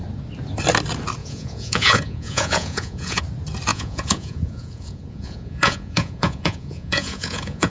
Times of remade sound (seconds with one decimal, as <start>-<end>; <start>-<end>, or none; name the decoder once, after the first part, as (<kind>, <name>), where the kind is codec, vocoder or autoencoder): 1.2-3.2 (vocoder, Vocos); 3.7-7.7